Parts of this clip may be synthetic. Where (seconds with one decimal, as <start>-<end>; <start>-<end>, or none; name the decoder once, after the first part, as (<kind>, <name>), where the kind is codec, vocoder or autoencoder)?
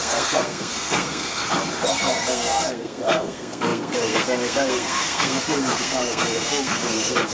0.0-1.4 (codec, SNAC); 1.9-7.3